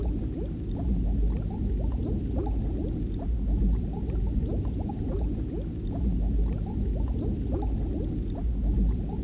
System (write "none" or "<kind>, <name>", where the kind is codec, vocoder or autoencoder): none